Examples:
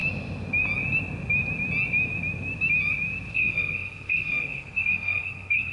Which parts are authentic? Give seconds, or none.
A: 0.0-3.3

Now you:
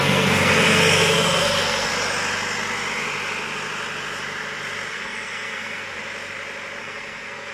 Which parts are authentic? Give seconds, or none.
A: 1.9-4.9; 6.0-6.8

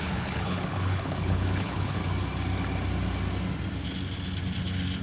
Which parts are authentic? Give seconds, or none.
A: 2.0-5.0

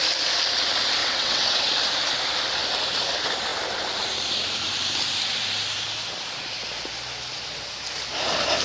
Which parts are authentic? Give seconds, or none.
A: 0.0-1.0; 1.7-8.6

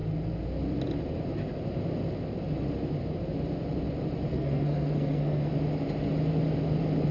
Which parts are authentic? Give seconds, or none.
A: 0.0-4.3; 5.5-7.1